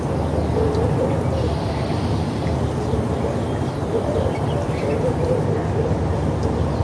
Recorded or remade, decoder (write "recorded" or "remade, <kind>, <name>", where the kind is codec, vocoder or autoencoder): recorded